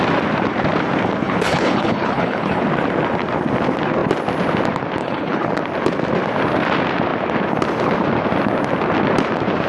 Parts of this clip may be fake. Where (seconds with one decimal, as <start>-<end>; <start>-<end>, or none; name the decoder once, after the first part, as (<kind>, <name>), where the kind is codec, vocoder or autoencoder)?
1.2-2.6 (codec, HILCodec); 5.0-5.5